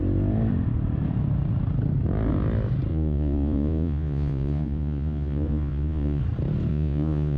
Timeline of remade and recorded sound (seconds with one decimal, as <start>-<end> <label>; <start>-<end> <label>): 0.0-2.9 recorded; 2.9-6.2 remade; 6.2-6.7 recorded; 6.7-7.4 remade